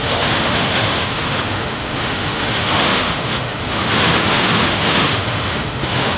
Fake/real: fake